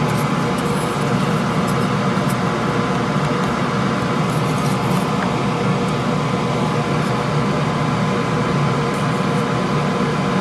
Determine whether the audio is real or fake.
real